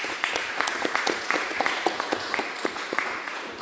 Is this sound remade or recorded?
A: remade